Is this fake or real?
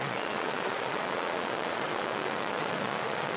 fake